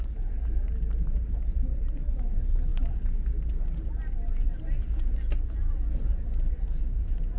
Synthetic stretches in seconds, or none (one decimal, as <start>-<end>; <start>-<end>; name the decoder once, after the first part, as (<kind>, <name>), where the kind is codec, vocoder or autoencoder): 0.0-2.7 (vocoder, BigVGAN v2); 6.5-7.4